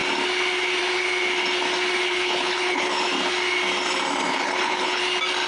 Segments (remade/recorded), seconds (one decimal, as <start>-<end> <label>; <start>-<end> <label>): 0.0-2.1 recorded; 2.1-3.0 remade; 3.0-4.3 recorded; 4.3-5.0 remade; 5.0-5.5 recorded